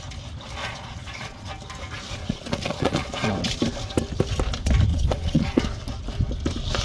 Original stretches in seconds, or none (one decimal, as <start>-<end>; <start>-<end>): 0.0-0.6; 1.5-2.2; 3.3-4.9; 5.6-6.8